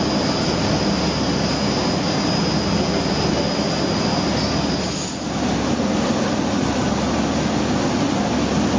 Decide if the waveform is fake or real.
real